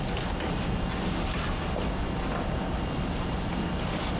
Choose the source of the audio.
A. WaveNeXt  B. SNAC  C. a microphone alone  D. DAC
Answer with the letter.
C